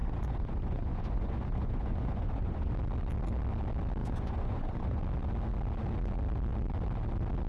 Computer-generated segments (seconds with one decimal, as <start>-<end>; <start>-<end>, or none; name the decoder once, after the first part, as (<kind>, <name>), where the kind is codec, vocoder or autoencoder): 0.0-2.7 (vocoder, Vocos); 4.0-5.0